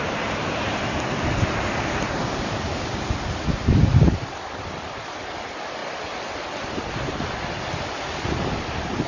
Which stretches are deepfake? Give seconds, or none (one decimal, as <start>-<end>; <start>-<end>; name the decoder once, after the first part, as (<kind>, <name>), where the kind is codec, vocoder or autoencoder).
none